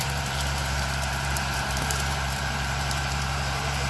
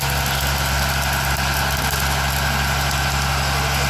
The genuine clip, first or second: second